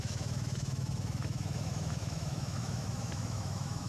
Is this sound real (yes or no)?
no